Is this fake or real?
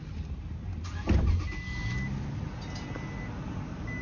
real